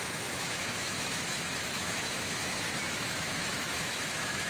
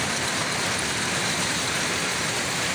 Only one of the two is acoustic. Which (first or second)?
second